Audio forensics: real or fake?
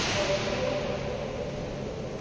real